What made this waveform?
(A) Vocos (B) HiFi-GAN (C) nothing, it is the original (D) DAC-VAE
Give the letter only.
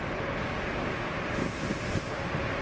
C